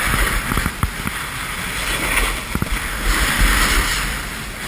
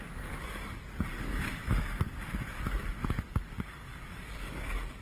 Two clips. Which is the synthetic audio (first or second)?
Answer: second